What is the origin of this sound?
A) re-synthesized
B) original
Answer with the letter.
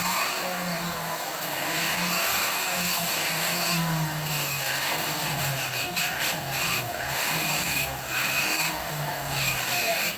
A